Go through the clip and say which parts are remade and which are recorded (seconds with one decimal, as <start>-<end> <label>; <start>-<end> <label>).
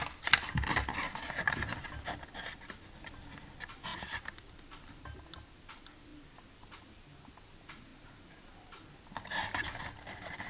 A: 0.0-10.5 recorded